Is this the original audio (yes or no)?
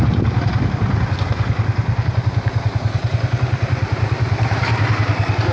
yes